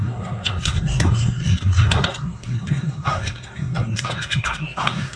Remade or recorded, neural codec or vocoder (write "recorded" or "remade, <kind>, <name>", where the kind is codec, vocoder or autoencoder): remade, codec, SNAC